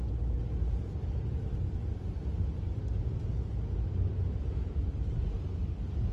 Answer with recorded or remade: recorded